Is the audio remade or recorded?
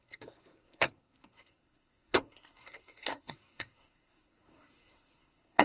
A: remade